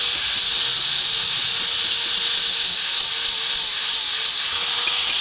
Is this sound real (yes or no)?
yes